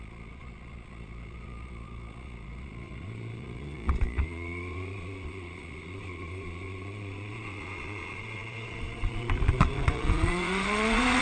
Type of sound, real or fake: fake